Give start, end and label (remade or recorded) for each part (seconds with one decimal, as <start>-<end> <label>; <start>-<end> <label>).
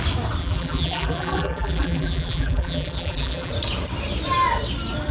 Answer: 0.0-0.4 recorded; 0.4-3.5 remade; 3.5-5.1 recorded